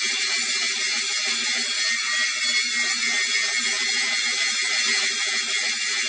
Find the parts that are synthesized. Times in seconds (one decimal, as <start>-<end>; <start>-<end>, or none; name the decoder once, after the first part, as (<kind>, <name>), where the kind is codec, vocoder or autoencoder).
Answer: none